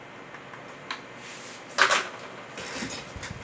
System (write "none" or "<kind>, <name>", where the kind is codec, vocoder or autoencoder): none